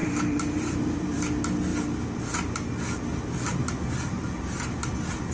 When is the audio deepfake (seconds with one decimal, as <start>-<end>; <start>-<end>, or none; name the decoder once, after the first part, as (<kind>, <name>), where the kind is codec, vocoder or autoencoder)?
0.0-1.2 (vocoder, BigVGAN v2)